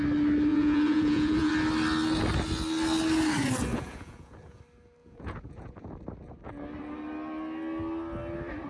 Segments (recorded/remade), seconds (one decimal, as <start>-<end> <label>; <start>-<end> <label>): 0.0-0.5 recorded; 0.5-1.5 remade; 1.5-3.7 recorded; 3.7-4.6 remade; 4.6-5.0 recorded; 5.0-5.9 remade; 5.9-8.7 recorded